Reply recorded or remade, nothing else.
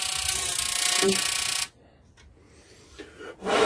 recorded